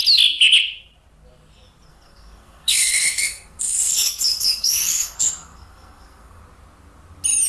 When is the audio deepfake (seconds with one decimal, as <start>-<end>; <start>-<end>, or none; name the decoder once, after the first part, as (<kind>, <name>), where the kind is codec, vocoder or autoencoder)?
1.9-6.4 (codec, SNAC)